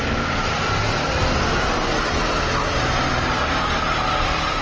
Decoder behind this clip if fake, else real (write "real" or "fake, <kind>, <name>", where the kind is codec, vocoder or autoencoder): real